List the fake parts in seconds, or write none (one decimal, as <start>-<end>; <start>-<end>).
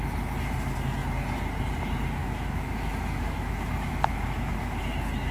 2.2-4.8